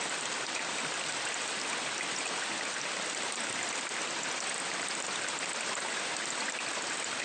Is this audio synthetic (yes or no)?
no